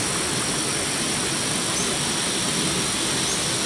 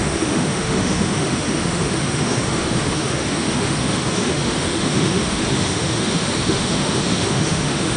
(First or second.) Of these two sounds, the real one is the first